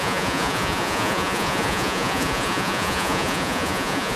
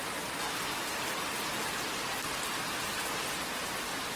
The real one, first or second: second